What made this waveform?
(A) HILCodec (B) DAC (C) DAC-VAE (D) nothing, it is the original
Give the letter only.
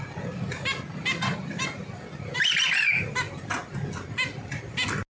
D